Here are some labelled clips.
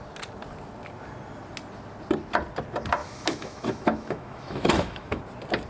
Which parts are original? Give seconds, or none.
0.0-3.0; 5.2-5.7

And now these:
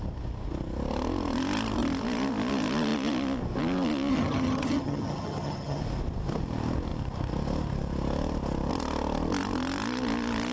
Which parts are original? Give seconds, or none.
0.0-4.1; 5.8-10.5

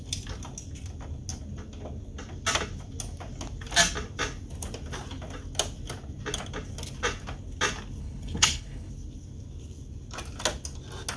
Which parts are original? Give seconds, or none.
0.0-8.0; 8.9-11.2

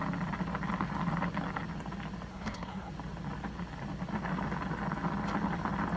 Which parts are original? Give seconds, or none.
0.0-2.3; 2.9-6.0